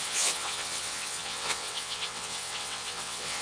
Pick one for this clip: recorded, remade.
remade